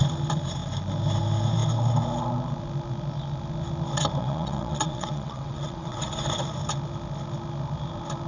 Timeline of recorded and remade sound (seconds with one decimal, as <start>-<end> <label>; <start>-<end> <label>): 0.0-4.2 recorded; 4.2-6.1 remade; 6.1-8.3 recorded